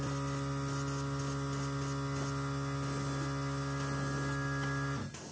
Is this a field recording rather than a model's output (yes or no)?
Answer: yes